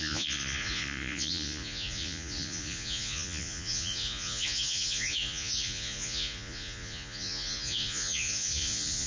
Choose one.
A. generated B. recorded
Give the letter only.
A